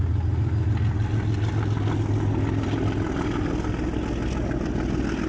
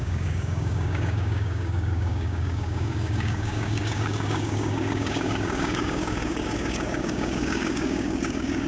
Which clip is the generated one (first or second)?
second